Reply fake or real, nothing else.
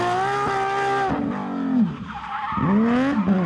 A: real